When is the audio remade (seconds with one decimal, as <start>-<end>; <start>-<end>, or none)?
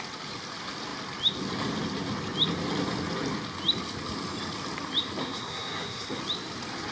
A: 5.2-6.2